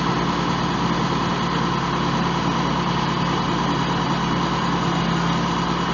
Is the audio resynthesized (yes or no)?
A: no